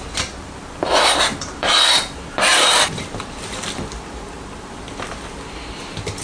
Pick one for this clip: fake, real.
fake